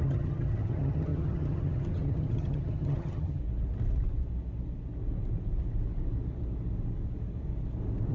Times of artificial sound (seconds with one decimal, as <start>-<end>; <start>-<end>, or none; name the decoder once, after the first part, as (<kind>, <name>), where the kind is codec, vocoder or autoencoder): 0.0-3.4 (vocoder, HiFi-GAN)